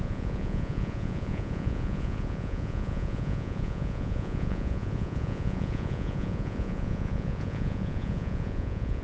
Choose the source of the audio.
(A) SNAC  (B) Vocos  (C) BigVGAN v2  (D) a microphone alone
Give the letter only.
B